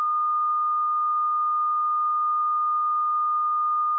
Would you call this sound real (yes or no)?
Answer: yes